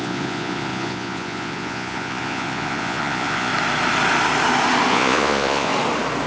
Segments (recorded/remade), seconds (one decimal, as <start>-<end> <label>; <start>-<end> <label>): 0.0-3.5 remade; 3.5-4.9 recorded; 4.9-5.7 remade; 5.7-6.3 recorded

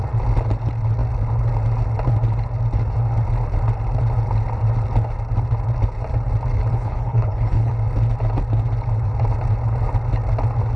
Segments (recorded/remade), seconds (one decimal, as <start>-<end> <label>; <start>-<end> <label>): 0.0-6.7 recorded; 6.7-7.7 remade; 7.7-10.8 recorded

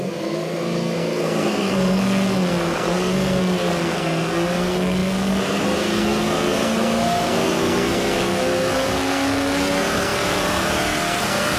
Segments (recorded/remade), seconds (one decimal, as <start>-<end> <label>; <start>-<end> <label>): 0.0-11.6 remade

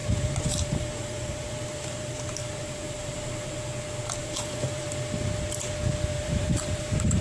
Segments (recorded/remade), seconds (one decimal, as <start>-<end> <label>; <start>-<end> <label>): 0.0-3.6 remade; 3.6-4.2 recorded; 4.2-4.9 remade; 4.9-6.1 recorded; 6.1-7.2 remade

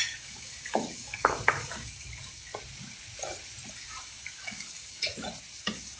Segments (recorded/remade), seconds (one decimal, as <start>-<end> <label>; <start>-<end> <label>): 0.0-2.5 remade; 2.5-3.7 recorded; 3.7-5.1 remade; 5.1-5.6 recorded; 5.6-6.0 remade

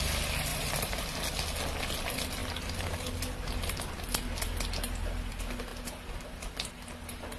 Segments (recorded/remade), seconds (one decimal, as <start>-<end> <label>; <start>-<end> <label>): 0.0-0.5 recorded; 0.5-1.0 remade; 1.0-7.4 recorded

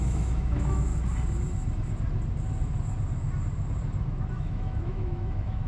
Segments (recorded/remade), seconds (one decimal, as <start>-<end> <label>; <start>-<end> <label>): 0.0-0.9 remade; 0.9-4.3 recorded; 4.3-5.7 remade